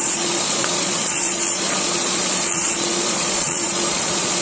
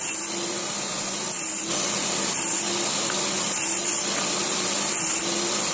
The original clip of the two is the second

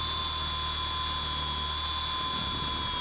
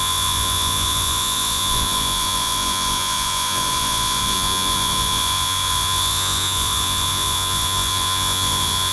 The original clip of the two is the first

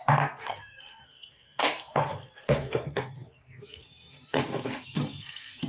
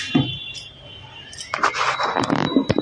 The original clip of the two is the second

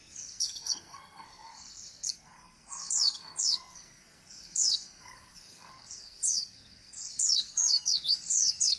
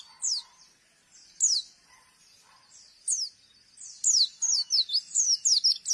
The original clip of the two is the second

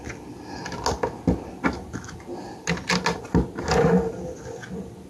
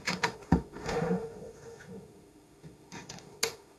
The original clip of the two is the first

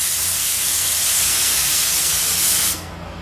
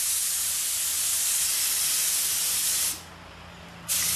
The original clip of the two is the second